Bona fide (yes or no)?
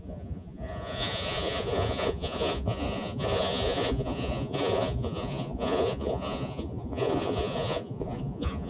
no